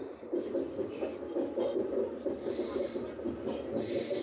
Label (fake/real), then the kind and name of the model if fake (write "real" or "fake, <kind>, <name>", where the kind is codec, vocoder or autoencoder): real